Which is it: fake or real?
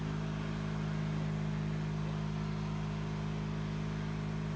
real